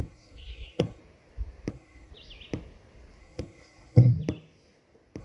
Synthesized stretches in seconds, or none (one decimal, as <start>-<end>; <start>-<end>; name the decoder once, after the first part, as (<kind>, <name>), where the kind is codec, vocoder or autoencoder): 0.0-1.0 (codec, SNAC); 1.7-2.1; 3.2-4.1